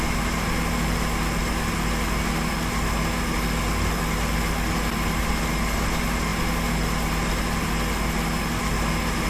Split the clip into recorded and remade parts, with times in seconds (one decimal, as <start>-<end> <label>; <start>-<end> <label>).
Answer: 0.0-9.3 recorded

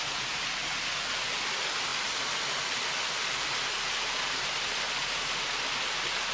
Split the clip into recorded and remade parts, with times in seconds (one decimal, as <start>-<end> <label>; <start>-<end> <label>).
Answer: 0.0-3.2 recorded; 3.2-5.8 remade; 5.8-6.3 recorded

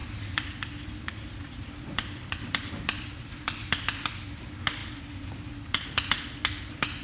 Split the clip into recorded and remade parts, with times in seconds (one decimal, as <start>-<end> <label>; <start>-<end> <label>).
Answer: 0.0-4.2 remade; 4.2-4.8 recorded; 4.8-6.4 remade; 6.4-7.0 recorded

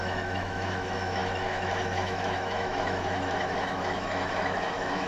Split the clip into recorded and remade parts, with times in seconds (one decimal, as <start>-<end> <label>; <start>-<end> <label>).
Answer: 0.0-5.1 remade

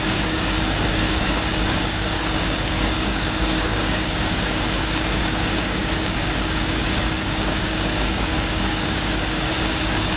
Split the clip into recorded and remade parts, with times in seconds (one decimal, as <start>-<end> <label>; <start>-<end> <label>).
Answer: 0.0-10.2 remade

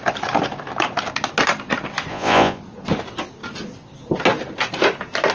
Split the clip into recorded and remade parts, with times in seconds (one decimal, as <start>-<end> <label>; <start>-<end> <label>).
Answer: 0.0-2.1 recorded; 2.1-2.6 remade; 2.6-5.3 recorded

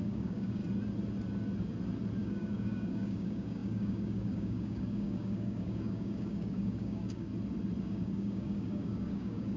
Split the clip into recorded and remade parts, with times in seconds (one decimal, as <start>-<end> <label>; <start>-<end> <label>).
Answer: 0.0-0.6 remade; 0.6-2.2 recorded; 2.2-7.3 remade; 7.3-7.8 recorded; 7.8-9.6 remade